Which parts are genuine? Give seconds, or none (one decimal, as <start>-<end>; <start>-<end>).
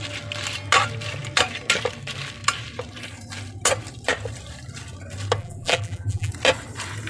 0.0-5.4; 6.3-7.1